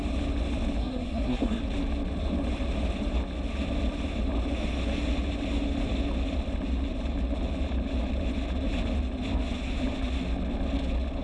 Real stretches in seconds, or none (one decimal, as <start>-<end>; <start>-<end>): 0.0-0.8; 1.6-11.2